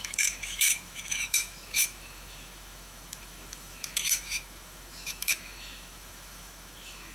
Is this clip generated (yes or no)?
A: yes